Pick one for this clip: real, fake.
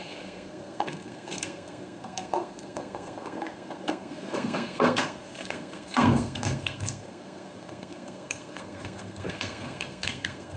fake